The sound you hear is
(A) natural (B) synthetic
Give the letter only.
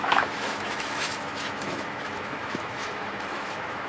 B